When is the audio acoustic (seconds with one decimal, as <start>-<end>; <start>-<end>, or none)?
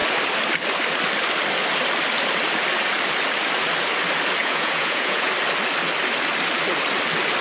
0.0-4.4; 5.3-7.4